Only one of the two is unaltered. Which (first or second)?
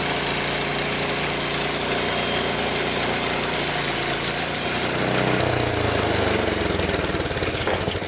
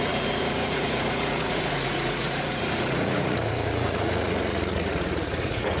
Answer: first